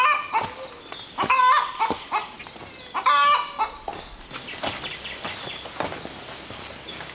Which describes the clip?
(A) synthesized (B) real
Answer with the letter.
B